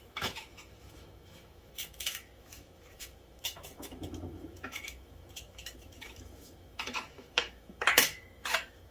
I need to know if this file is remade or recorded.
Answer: remade